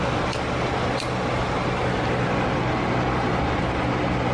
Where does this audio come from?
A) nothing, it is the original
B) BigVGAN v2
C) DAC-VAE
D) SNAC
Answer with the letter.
A